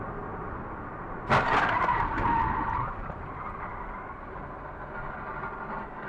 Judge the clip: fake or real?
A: real